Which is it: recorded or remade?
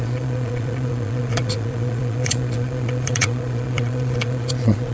remade